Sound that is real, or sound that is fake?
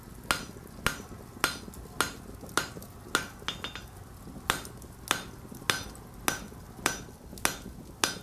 real